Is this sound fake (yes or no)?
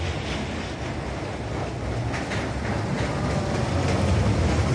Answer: no